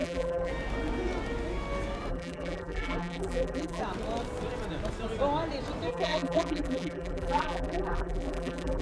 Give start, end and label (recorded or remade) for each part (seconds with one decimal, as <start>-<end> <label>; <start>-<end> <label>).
0.0-0.5 remade; 0.5-2.1 recorded; 2.1-3.8 remade; 3.8-5.9 recorded; 5.9-8.8 remade